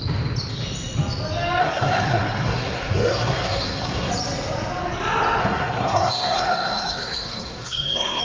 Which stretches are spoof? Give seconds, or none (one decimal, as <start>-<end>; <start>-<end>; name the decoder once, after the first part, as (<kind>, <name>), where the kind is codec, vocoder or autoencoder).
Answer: 1.6-4.1 (codec, SNAC); 5.4-8.2